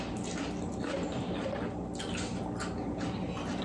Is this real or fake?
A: real